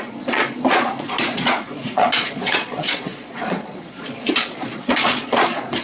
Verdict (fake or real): fake